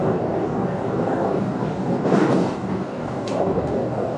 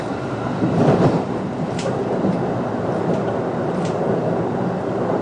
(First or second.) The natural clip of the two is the second